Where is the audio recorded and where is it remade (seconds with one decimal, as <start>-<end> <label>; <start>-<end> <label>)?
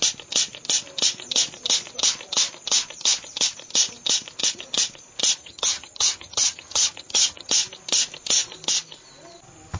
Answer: 0.0-5.4 recorded; 5.4-7.5 remade; 7.5-9.8 recorded